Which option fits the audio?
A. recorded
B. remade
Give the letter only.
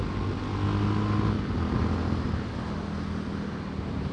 A